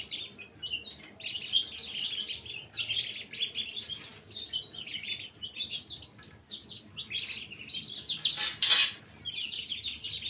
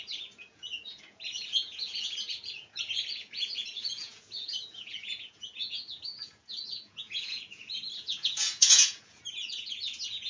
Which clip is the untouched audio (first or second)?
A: first